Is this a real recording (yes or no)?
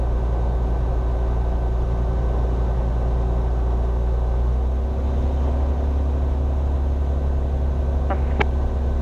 yes